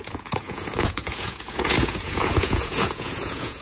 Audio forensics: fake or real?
fake